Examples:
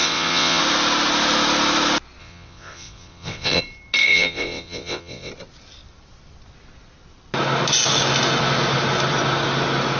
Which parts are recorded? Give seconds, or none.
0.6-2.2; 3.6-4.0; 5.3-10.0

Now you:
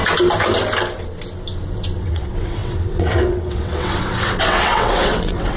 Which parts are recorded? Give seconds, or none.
0.0-2.0

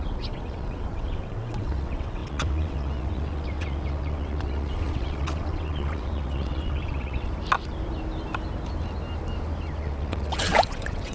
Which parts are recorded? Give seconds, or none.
7.3-9.8

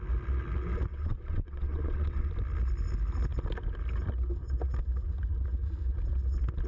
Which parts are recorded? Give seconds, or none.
0.0-0.9; 2.3-6.7

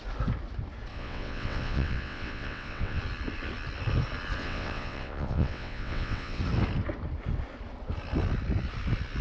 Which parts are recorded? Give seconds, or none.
0.0-0.9; 3.0-4.4; 6.4-9.2

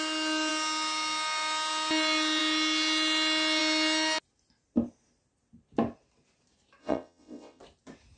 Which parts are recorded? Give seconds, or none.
0.0-6.8; 7.6-8.2

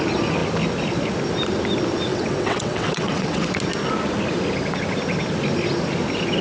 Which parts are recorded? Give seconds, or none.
0.0-2.1; 3.5-6.4